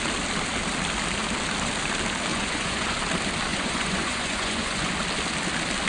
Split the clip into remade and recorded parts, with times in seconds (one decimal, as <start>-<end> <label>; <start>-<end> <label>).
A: 0.0-2.3 recorded; 2.3-3.0 remade; 3.0-3.5 recorded; 3.5-4.9 remade; 4.9-5.9 recorded